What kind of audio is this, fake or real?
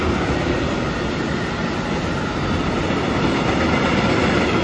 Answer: real